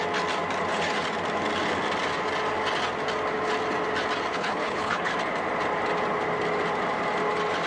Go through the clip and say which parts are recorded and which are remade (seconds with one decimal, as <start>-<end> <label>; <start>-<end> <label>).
0.0-4.3 recorded; 4.3-5.1 remade; 5.1-7.7 recorded